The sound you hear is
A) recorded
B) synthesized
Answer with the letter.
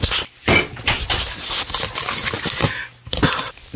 A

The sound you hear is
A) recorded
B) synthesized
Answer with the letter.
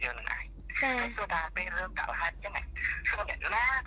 B